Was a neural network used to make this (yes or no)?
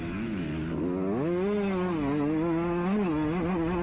no